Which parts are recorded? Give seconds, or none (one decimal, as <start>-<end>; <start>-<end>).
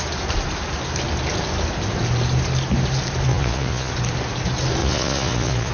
0.0-3.3; 3.9-4.8